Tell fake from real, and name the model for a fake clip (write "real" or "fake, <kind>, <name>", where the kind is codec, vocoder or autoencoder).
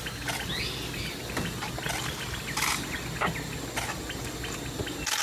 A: real